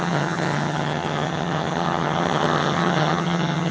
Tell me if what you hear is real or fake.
fake